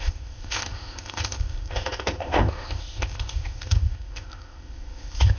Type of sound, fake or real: fake